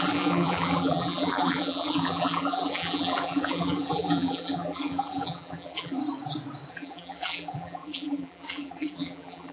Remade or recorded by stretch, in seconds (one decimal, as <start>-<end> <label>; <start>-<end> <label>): 0.0-6.0 remade; 6.0-6.7 recorded; 6.7-9.5 remade